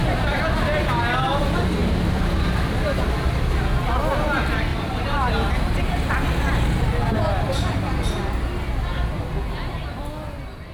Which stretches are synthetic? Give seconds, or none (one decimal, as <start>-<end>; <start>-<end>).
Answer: 1.8-2.8; 4.7-6.1